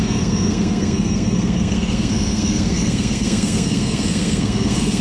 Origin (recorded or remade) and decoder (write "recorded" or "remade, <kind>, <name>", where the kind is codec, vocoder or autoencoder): remade, codec, SNAC